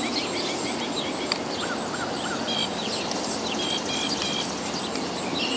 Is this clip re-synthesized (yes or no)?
no